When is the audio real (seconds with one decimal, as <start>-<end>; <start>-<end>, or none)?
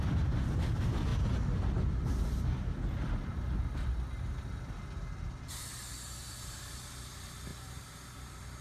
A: 0.0-8.6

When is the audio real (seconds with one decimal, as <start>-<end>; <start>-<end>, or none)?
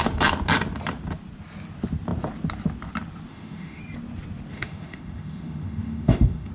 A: 0.0-3.3; 3.8-4.5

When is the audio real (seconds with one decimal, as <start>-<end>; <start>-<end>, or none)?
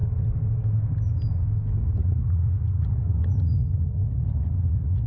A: 0.0-2.0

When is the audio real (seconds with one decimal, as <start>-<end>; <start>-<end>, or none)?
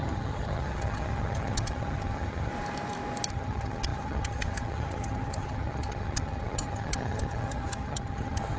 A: 2.5-3.3